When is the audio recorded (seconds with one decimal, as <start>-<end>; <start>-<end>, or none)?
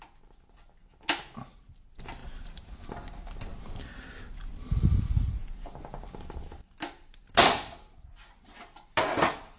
0.0-2.2; 2.8-9.6